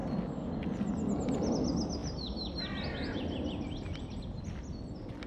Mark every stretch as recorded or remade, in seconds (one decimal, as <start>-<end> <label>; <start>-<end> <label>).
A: 0.0-5.3 recorded